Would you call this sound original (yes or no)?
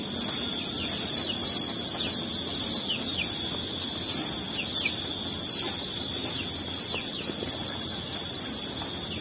yes